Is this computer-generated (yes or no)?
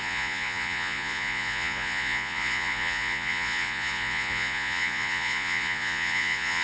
yes